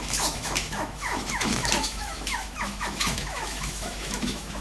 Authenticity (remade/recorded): remade